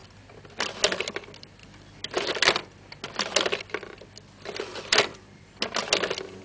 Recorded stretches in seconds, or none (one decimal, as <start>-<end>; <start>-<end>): 0.0-6.4